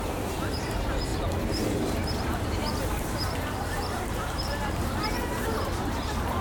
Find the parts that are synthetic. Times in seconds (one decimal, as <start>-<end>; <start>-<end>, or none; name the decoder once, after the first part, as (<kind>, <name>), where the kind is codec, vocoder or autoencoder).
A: 0.0-1.1 (vocoder, BigVGAN v2); 1.6-6.4